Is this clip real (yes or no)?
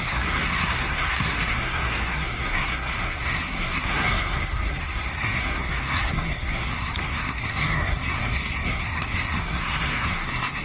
no